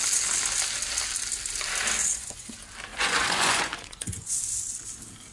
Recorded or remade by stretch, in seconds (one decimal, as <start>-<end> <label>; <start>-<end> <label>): 0.0-2.0 recorded; 2.0-2.5 remade; 2.5-2.9 recorded; 2.9-4.4 remade; 4.4-5.3 recorded